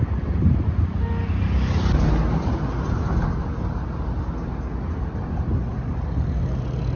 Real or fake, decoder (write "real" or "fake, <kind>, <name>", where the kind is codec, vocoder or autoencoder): real